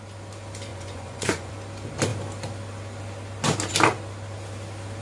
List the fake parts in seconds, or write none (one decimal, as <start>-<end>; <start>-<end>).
0.7-1.5